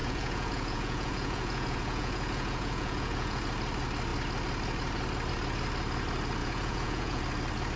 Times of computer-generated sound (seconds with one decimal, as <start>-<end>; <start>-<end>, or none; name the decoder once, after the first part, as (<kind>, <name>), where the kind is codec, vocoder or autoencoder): 0.0-3.4 (vocoder, Vocos); 6.4-7.2